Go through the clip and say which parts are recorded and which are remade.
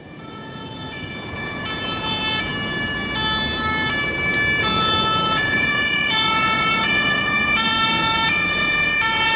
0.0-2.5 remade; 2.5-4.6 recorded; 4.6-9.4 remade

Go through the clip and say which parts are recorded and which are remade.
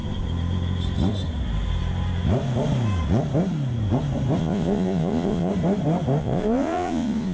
0.0-4.4 recorded; 4.4-5.5 remade; 5.5-6.2 recorded; 6.2-7.3 remade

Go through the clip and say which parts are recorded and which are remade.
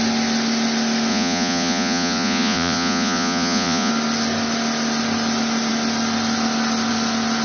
0.0-1.1 recorded; 1.1-3.9 remade; 3.9-7.4 recorded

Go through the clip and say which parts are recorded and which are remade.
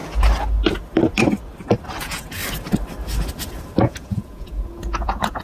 0.0-2.0 recorded; 2.0-2.4 remade; 2.4-3.8 recorded; 3.8-5.4 remade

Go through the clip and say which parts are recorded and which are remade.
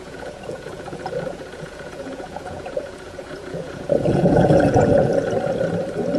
0.0-5.1 remade; 5.1-6.2 recorded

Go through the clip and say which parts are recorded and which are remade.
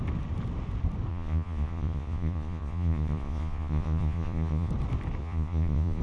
0.0-1.1 recorded; 1.1-4.7 remade; 4.7-5.2 recorded; 5.2-6.0 remade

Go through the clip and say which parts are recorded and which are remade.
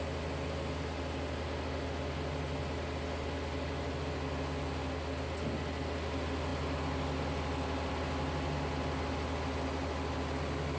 0.0-10.8 recorded